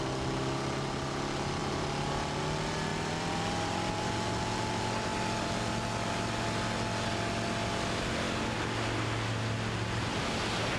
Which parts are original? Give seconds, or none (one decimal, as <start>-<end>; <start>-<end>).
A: 0.0-1.6; 2.4-2.9; 4.0-10.8